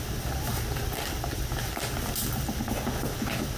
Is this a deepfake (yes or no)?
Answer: no